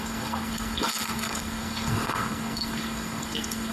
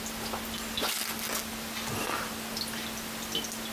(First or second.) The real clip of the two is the second